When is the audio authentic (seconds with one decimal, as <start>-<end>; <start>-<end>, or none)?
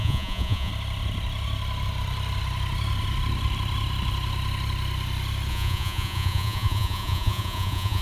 0.7-5.5